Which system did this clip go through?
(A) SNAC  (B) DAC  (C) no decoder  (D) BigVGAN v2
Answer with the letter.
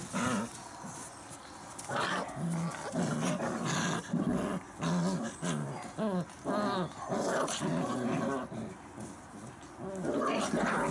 C